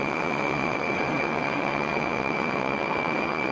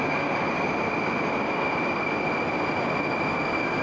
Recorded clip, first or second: second